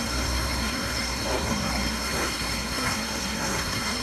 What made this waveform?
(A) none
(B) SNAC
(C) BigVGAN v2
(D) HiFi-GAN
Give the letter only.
B